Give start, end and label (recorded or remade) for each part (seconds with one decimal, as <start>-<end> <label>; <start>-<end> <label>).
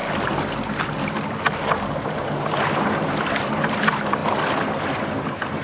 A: 0.0-5.6 recorded